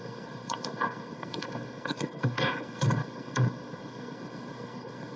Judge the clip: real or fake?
fake